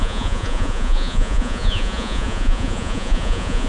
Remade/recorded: remade